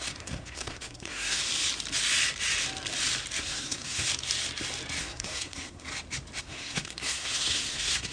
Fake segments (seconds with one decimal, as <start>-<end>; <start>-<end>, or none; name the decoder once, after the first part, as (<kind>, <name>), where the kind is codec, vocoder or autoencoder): 0.0-1.4 (codec, SNAC); 3.4-4.1; 5.0-5.9; 6.4-8.1